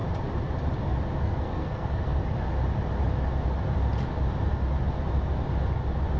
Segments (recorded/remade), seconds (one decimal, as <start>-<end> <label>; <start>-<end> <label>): 0.0-1.2 recorded; 1.2-2.2 remade; 2.2-6.2 recorded